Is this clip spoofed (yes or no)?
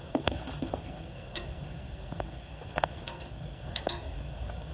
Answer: yes